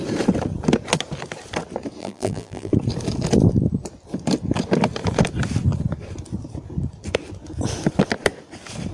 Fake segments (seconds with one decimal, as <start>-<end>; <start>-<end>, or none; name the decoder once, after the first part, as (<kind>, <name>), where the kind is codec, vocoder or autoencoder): 2.0-2.7 (vocoder, BigVGAN v2)